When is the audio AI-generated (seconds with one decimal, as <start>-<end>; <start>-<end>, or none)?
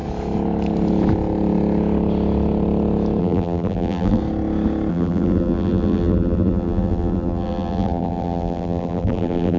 3.2-4.2; 4.9-9.6